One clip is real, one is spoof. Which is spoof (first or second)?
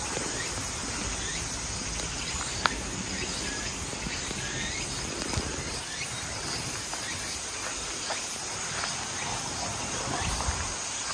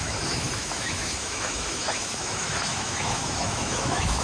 second